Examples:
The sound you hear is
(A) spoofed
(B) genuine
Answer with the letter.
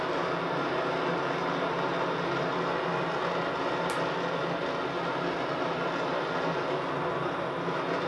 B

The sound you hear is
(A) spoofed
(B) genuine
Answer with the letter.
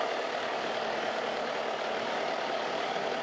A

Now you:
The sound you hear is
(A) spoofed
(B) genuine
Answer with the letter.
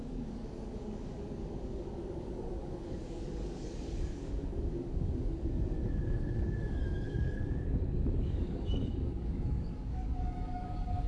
A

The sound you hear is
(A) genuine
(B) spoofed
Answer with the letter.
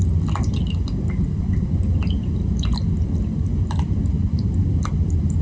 A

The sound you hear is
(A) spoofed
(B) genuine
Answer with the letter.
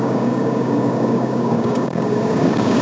A